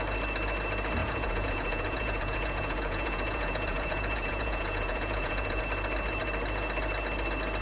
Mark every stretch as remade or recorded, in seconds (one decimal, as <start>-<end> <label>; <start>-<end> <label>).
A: 0.0-1.0 recorded; 1.0-5.6 remade; 5.6-7.6 recorded